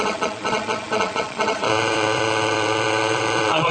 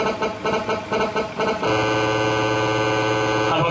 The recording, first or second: second